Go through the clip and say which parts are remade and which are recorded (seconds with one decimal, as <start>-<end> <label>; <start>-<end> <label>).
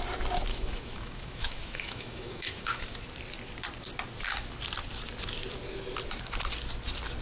0.0-0.5 recorded; 0.5-3.0 remade; 3.0-7.2 recorded